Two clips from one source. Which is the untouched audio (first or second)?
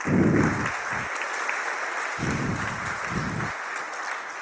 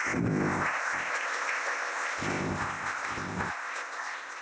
first